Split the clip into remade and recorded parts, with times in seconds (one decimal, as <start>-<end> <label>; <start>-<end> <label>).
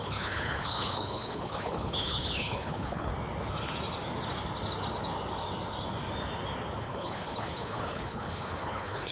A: 0.0-3.1 remade; 3.1-6.8 recorded; 6.8-9.1 remade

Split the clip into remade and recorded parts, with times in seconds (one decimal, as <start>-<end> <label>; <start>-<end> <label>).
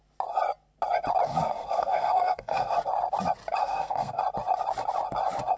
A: 0.0-1.4 recorded; 1.4-2.7 remade; 2.7-3.6 recorded; 3.6-4.2 remade; 4.2-5.6 recorded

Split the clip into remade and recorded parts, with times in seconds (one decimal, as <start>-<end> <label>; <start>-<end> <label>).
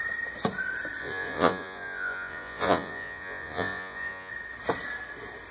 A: 0.0-1.0 recorded; 1.0-4.3 remade; 4.3-5.5 recorded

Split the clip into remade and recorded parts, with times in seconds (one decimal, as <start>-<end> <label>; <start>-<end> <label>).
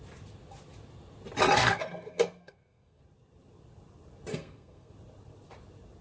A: 0.0-1.6 recorded; 1.6-3.0 remade; 3.0-4.3 recorded; 4.3-4.9 remade; 4.9-6.0 recorded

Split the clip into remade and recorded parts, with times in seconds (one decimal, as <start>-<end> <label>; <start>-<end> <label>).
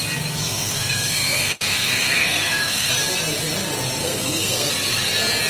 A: 0.0-0.4 recorded; 0.4-2.9 remade; 2.9-4.0 recorded; 4.0-4.7 remade; 4.7-5.5 recorded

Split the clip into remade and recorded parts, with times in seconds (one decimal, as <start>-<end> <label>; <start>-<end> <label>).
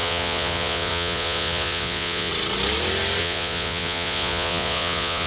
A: 0.0-2.3 remade; 2.3-3.2 recorded; 3.2-5.3 remade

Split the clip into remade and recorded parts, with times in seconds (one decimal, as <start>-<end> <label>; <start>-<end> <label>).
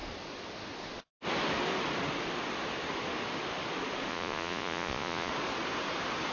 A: 0.0-4.1 recorded; 4.1-5.3 remade; 5.3-6.3 recorded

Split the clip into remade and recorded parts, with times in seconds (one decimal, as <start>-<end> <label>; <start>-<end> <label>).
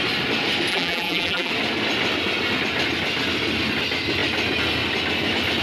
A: 0.0-0.7 recorded; 0.7-1.5 remade; 1.5-5.6 recorded